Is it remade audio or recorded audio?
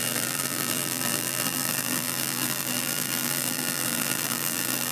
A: remade